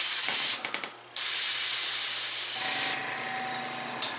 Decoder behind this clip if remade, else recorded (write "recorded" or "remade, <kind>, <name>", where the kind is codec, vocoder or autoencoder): recorded